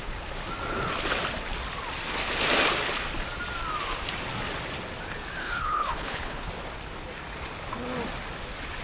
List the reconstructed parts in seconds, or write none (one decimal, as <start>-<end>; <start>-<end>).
5.4-6.5